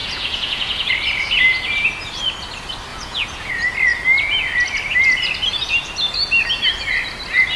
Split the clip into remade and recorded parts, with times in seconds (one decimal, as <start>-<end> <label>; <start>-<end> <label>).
0.0-0.9 remade; 0.9-2.9 recorded; 2.9-3.5 remade; 3.5-7.6 recorded